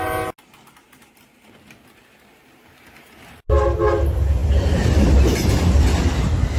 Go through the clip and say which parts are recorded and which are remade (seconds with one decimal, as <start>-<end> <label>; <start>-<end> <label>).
0.0-2.3 recorded; 2.3-3.8 remade; 3.8-6.6 recorded